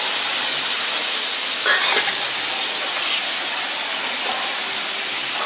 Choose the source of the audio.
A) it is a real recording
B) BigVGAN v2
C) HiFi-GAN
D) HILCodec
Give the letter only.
A